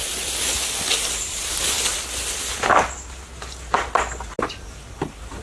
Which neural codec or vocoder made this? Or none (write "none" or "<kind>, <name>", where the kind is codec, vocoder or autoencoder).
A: none